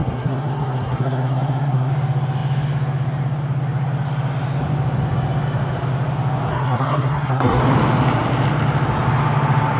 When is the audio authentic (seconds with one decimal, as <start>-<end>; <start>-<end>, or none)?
1.9-6.5; 7.6-9.8